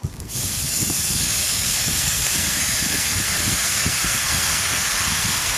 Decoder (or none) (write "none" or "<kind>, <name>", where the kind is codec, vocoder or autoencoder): codec, SNAC